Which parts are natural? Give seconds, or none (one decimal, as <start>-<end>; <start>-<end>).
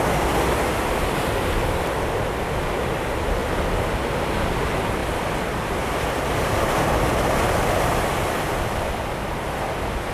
0.0-10.1